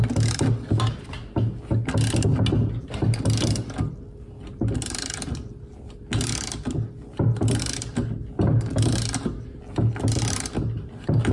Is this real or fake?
real